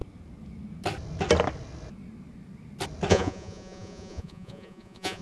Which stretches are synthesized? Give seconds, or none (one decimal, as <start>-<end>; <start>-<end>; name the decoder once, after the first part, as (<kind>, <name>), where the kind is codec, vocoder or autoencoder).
3.1-5.2 (vocoder, Vocos)